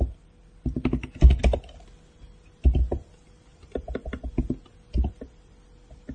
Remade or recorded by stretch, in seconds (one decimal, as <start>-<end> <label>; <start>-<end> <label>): 0.0-3.5 recorded; 3.5-4.3 remade; 4.3-6.1 recorded